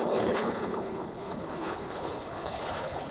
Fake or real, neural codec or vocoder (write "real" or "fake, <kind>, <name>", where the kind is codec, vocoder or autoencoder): fake, codec, HILCodec